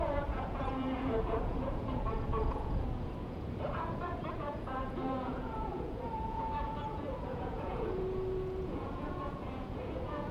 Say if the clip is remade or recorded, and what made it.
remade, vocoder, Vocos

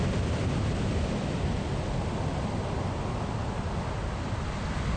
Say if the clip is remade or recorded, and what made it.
recorded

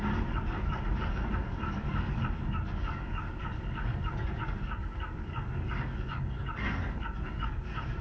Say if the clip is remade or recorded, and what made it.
remade, codec, DAC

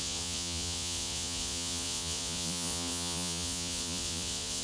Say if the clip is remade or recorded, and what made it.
remade, vocoder, Vocos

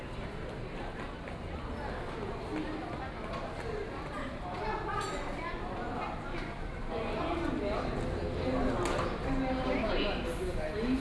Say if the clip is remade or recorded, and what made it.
recorded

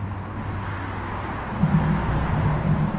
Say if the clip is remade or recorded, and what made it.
recorded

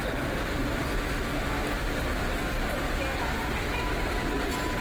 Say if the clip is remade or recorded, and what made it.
recorded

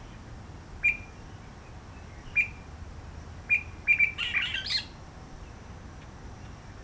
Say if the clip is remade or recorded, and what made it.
recorded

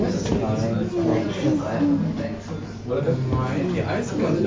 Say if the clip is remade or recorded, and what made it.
recorded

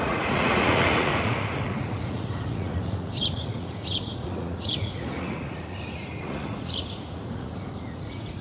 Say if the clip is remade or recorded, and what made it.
remade, vocoder, Vocos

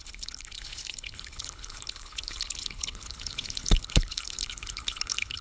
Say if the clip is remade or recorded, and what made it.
remade, codec, HILCodec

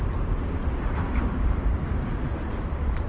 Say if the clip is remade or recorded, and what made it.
remade, vocoder, BigVGAN v2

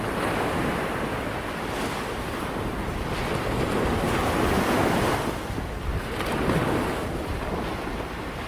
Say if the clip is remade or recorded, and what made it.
recorded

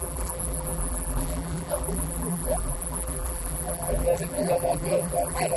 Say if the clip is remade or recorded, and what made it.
remade, vocoder, BigVGAN v2